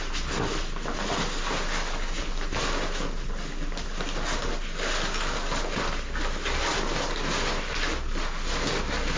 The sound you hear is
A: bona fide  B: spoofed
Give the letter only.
A